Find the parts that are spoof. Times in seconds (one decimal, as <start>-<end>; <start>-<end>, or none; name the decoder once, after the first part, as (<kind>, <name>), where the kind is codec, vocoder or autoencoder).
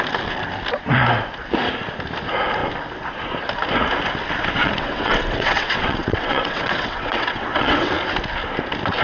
4.6-7.9 (vocoder, WaveNeXt)